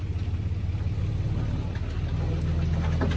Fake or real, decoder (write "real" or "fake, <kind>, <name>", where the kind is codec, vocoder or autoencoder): real